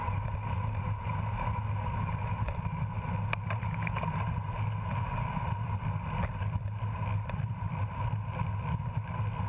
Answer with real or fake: real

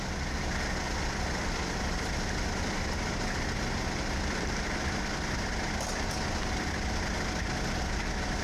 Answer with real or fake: real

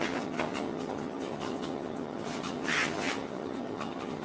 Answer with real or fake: fake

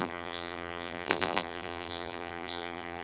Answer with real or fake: fake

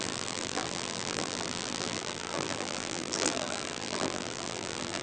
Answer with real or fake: fake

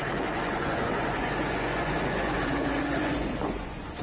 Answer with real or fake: fake